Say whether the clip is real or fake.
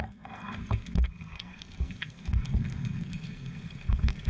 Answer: fake